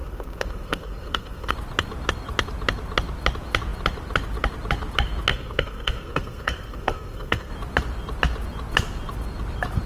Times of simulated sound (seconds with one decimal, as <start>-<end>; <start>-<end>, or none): 0.0-1.5; 5.3-7.5